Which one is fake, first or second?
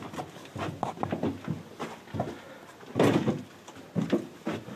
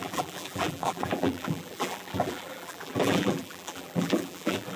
second